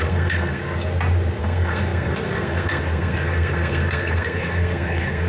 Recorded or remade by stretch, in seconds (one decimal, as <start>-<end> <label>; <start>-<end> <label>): 0.0-0.6 remade; 0.6-1.4 recorded; 1.4-5.3 remade